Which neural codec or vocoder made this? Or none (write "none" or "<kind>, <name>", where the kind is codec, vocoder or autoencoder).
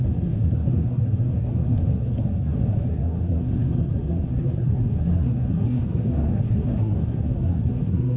codec, SNAC